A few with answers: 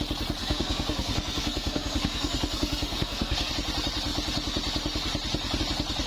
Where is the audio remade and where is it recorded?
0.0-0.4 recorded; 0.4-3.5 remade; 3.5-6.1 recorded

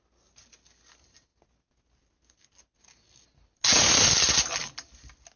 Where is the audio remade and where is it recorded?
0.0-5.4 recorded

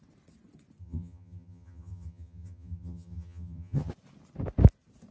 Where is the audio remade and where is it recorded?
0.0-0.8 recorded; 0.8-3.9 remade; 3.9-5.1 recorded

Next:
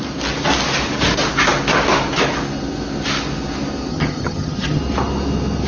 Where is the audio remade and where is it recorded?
0.0-3.9 recorded; 3.9-4.8 remade; 4.8-5.7 recorded